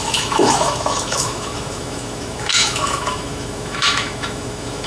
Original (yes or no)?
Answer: no